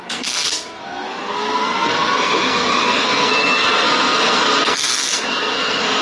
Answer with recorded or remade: remade